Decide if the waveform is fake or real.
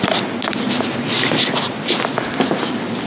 real